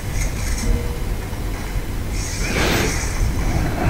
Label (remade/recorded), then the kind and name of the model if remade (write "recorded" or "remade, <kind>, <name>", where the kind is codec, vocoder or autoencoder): recorded